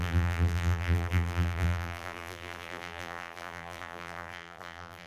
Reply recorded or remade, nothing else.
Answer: remade